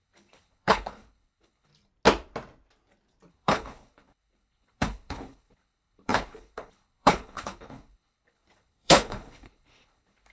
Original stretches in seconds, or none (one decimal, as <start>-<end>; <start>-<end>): 1.7-3.3